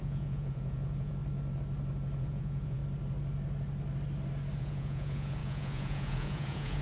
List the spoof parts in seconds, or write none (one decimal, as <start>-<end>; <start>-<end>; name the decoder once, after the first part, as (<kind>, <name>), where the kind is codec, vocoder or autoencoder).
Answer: 0.0-1.2 (vocoder, Vocos); 2.2-2.8; 4.6-6.8